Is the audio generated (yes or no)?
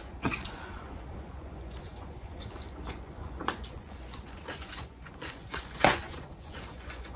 yes